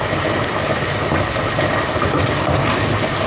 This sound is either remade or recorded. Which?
recorded